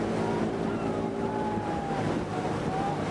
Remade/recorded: remade